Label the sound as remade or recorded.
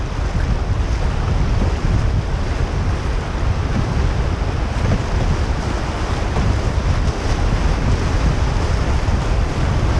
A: recorded